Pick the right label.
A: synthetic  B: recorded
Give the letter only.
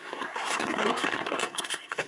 A